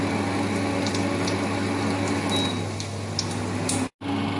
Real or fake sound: real